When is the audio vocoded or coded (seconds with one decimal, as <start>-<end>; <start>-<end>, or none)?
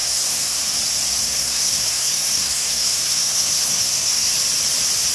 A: 0.0-0.6; 1.2-4.3